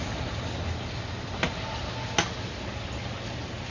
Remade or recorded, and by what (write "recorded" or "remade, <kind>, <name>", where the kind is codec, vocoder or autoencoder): recorded